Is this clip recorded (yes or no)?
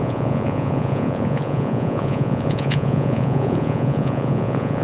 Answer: no